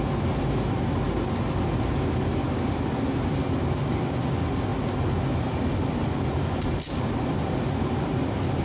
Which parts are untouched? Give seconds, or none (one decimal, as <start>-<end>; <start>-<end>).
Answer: 0.0-8.6